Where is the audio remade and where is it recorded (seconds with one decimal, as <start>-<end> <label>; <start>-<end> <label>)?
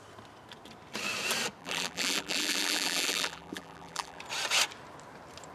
0.0-1.6 recorded; 1.6-4.2 remade; 4.2-5.5 recorded